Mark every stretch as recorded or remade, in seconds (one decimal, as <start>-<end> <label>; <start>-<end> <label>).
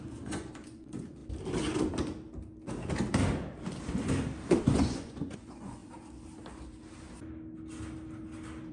0.0-1.2 remade; 1.2-4.6 recorded; 4.6-5.8 remade; 5.8-8.7 recorded